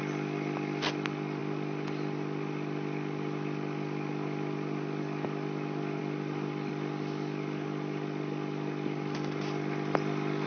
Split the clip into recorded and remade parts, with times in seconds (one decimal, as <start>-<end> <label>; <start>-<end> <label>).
0.0-10.5 recorded